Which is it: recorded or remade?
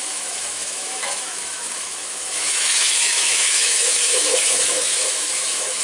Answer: remade